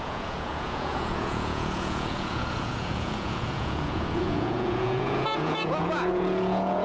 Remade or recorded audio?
remade